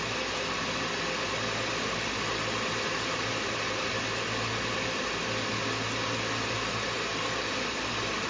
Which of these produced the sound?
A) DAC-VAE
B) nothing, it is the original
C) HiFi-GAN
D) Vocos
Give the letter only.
B